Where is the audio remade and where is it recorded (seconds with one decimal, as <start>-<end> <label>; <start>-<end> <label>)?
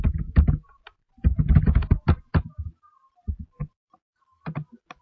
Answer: 0.0-5.0 recorded